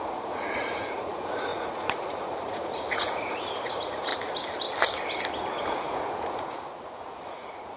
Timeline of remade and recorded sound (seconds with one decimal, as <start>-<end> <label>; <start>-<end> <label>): 0.0-4.1 remade; 4.1-5.6 recorded; 5.6-7.8 remade